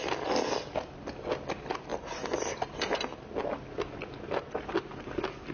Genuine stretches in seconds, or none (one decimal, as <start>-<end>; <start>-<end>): 0.0-5.5